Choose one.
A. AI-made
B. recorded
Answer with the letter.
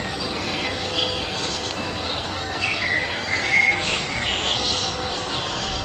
A